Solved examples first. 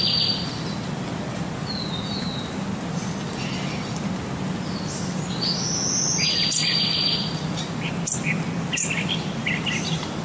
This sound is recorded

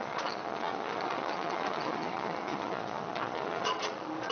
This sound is remade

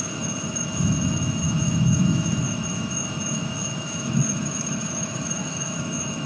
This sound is remade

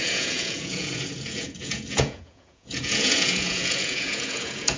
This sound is remade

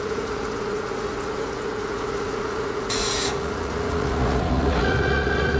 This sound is remade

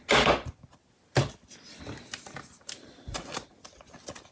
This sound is recorded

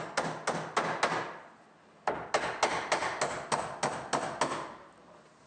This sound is recorded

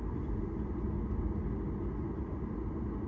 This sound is recorded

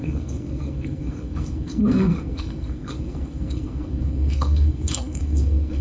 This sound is remade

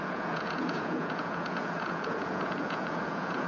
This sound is remade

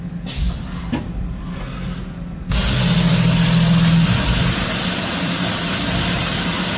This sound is recorded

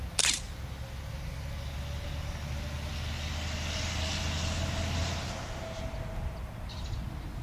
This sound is recorded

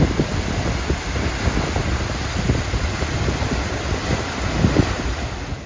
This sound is recorded